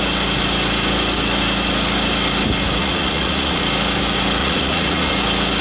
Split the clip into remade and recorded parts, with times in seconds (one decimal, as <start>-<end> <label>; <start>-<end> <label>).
0.0-2.8 recorded; 2.8-3.6 remade; 3.6-4.4 recorded; 4.4-5.1 remade; 5.1-5.6 recorded